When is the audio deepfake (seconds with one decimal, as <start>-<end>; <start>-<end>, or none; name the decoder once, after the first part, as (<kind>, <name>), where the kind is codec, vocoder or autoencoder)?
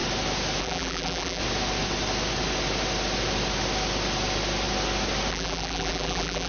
0.6-1.4 (vocoder, BigVGAN v2); 5.3-6.5